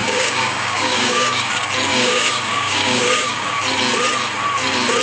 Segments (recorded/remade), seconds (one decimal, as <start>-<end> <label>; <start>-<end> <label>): 0.0-1.5 remade; 1.5-1.9 recorded; 1.9-3.6 remade; 3.6-5.0 recorded